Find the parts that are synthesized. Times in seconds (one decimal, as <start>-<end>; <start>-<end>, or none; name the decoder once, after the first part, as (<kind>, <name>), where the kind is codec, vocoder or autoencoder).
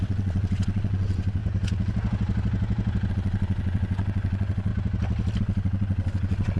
0.0-1.4 (vocoder, WaveNeXt); 3.1-4.7; 5.4-6.6